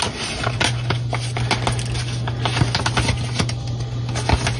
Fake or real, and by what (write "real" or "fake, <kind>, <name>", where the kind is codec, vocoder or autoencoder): real